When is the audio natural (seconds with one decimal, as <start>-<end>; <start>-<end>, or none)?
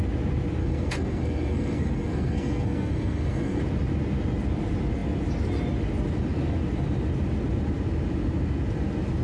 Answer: 0.0-0.6; 3.6-9.2